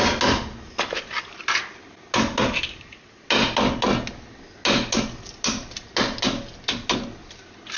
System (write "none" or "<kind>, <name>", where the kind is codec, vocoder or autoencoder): none